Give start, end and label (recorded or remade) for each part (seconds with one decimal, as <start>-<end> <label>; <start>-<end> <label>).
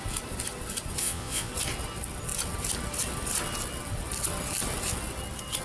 0.0-1.0 recorded; 1.0-1.5 remade; 1.5-5.6 recorded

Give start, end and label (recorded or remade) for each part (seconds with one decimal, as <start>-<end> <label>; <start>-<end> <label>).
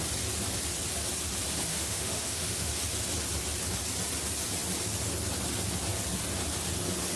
0.0-1.7 recorded; 1.7-2.7 remade; 2.7-7.2 recorded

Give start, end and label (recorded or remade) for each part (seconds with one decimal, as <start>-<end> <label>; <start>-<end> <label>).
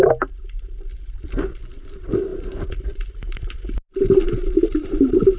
0.0-5.4 recorded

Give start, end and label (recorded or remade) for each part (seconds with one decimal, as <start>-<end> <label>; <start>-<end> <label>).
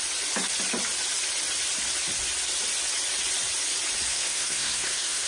0.0-4.1 recorded; 4.1-5.3 remade